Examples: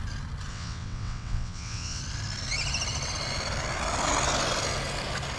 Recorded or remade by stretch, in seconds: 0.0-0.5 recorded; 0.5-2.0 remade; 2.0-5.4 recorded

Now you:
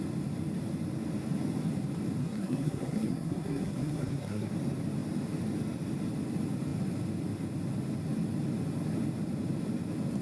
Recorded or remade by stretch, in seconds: 0.0-2.2 recorded; 2.2-4.5 remade; 4.5-10.2 recorded

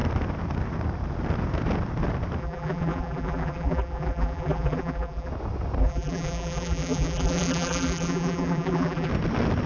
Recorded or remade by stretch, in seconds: 0.0-2.4 recorded; 2.4-5.3 remade; 5.3-5.8 recorded; 5.8-9.1 remade; 9.1-9.7 recorded

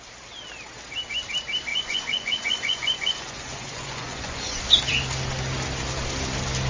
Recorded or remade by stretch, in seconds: 0.0-1.7 recorded; 1.7-4.6 remade; 4.6-6.7 recorded

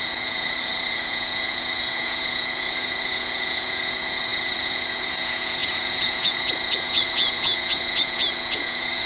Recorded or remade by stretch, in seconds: 0.0-9.1 remade

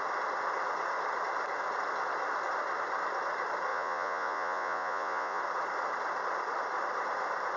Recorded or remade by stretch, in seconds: 0.0-3.7 recorded; 3.7-5.4 remade; 5.4-7.6 recorded

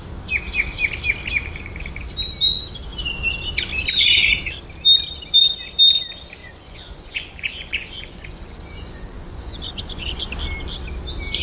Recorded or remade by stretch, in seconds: 0.0-6.4 recorded; 6.4-10.3 remade; 10.3-11.4 recorded

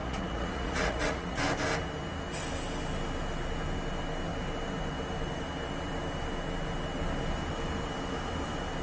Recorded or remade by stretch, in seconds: 0.0-1.4 remade; 1.4-8.8 recorded